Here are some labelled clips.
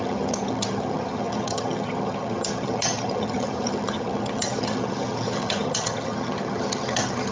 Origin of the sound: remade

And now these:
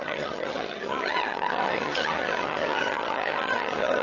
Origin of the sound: remade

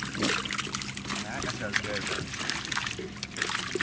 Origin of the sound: recorded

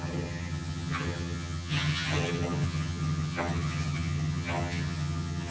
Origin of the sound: remade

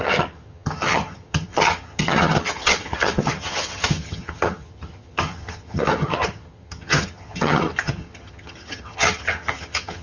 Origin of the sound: remade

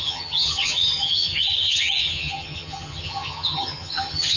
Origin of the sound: remade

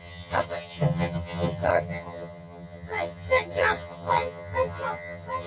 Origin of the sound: remade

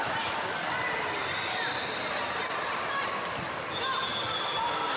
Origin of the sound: recorded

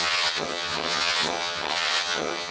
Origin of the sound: remade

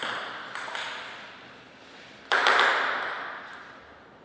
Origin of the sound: recorded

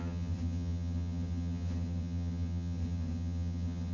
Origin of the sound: remade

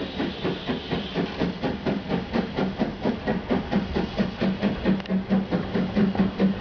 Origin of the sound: recorded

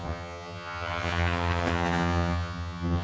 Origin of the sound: remade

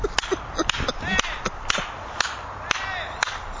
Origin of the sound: recorded